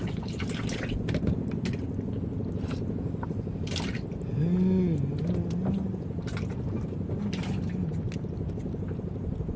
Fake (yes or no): no